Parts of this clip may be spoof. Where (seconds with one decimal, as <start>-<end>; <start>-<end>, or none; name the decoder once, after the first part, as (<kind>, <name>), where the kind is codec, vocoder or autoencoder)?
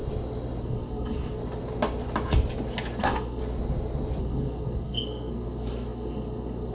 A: 0.6-1.4 (codec, SNAC); 3.0-3.4; 4.2-6.7